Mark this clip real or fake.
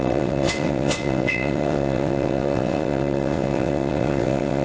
fake